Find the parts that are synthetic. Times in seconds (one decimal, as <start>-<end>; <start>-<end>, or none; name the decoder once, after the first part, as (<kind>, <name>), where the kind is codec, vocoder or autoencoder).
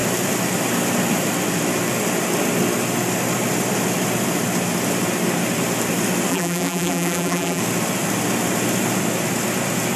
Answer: 6.3-7.6 (vocoder, BigVGAN v2)